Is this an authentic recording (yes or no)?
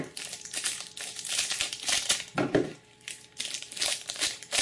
no